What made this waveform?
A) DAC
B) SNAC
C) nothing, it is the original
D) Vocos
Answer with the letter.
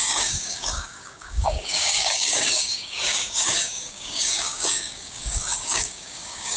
A